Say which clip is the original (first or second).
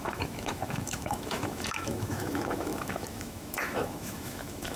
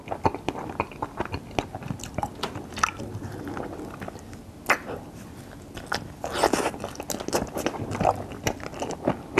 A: second